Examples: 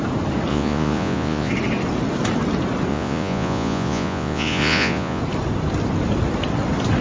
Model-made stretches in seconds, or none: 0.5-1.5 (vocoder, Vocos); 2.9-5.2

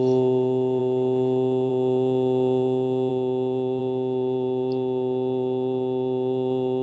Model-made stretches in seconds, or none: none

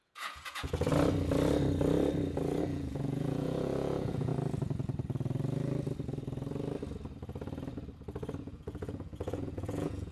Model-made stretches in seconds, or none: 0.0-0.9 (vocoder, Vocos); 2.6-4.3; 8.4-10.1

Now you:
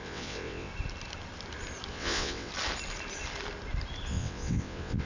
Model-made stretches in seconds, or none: 0.0-0.7 (vocoder, WaveNeXt); 1.9-2.5; 4.1-5.1

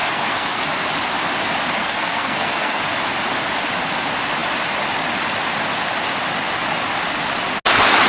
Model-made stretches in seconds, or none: 0.0-0.6 (codec, SNAC); 1.8-2.8

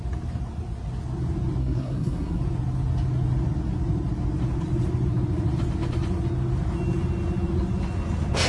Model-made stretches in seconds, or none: 1.6-2.4 (codec, SNAC)